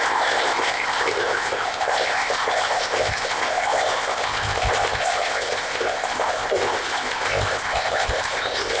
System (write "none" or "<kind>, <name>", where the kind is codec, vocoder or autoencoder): codec, ZipCodec